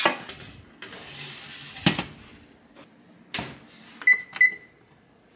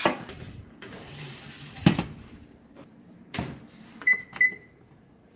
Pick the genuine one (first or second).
first